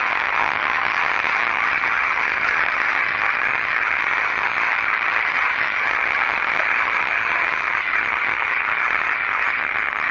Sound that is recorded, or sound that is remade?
remade